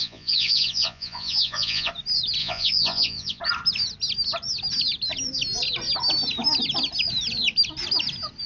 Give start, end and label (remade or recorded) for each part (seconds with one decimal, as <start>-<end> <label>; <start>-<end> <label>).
0.0-1.9 remade; 1.9-2.4 recorded; 2.4-3.4 remade; 3.4-8.5 recorded